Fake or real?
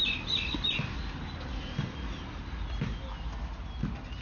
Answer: real